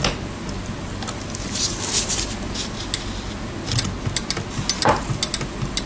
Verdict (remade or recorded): recorded